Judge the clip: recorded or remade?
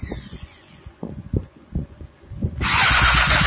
remade